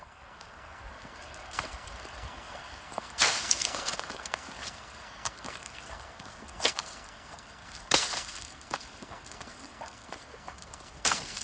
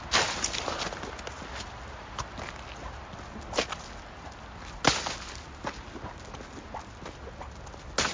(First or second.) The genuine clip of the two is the second